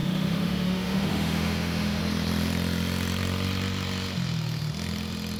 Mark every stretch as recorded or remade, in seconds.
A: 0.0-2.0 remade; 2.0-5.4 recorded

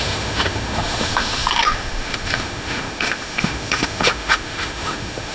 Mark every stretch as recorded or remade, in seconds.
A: 0.0-5.3 remade

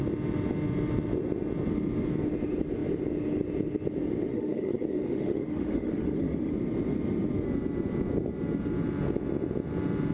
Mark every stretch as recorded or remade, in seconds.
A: 0.0-4.3 recorded; 4.3-6.5 remade; 6.5-10.1 recorded

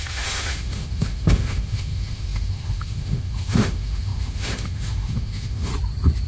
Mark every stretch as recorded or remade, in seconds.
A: 0.0-5.7 remade; 5.7-6.3 recorded